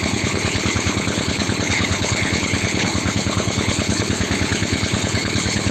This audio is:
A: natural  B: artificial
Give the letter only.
B